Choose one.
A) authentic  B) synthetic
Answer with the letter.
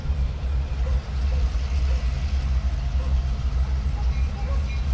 A